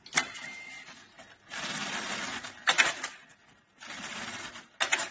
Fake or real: real